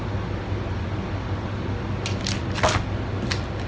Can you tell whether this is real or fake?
real